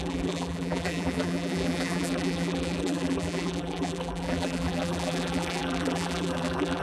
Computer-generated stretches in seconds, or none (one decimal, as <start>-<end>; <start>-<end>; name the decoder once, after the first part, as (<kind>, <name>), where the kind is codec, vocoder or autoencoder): 0.0-6.8 (vocoder, BigVGAN v2)